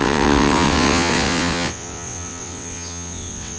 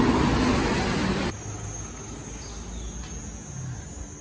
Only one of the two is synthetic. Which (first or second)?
first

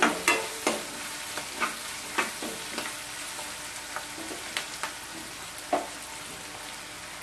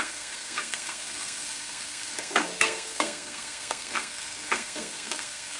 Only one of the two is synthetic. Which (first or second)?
second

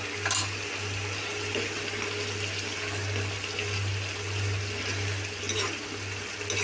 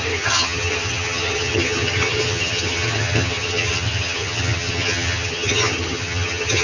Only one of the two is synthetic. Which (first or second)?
second